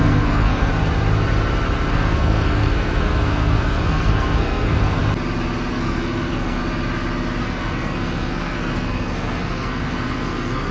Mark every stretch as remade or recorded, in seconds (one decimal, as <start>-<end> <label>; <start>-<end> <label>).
0.0-0.7 remade; 0.7-1.9 recorded; 1.9-5.0 remade; 5.0-5.7 recorded; 5.7-6.6 remade; 6.6-7.4 recorded; 7.4-10.7 remade